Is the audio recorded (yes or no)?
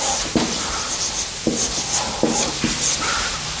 yes